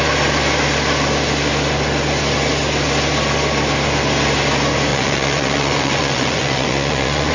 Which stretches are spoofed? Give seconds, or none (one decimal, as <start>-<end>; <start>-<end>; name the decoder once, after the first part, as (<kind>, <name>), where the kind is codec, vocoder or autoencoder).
4.9-7.3 (vocoder, Vocos)